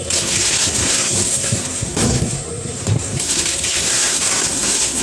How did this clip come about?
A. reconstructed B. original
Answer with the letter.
A